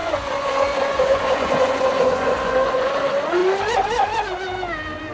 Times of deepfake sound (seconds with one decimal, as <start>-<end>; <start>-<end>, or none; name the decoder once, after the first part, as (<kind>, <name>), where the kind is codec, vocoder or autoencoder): 0.0-2.9 (vocoder, Vocos)